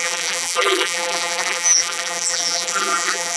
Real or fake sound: fake